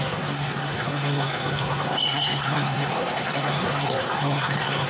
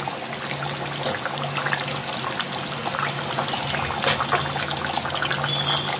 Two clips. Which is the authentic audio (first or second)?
second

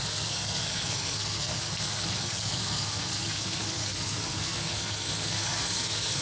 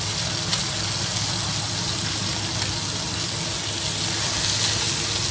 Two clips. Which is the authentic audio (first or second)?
second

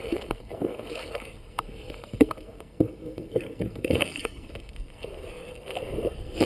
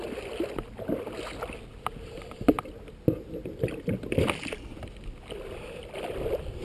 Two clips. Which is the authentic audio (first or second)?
second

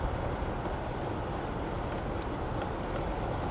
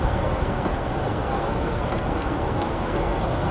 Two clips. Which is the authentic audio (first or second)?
first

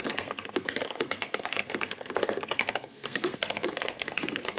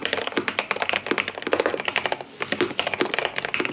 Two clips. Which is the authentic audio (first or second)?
second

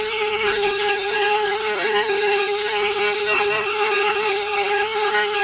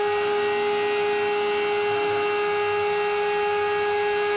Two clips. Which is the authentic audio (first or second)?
second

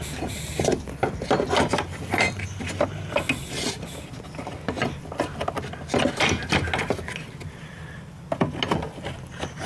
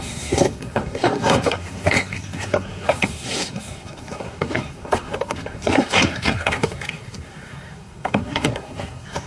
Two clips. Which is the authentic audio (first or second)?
first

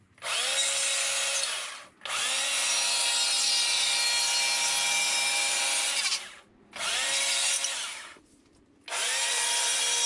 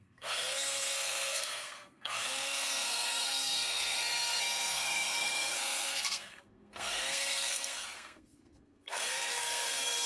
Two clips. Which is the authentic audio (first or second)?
first